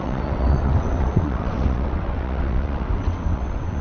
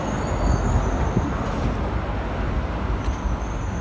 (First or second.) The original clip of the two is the second